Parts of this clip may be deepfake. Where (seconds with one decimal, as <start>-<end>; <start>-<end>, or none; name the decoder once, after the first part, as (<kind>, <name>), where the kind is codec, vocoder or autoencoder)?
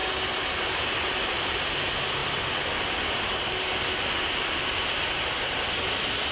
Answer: none